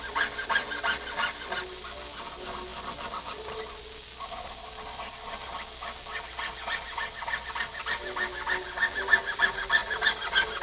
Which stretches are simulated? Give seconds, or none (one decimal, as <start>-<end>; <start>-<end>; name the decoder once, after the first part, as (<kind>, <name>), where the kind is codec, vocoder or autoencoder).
none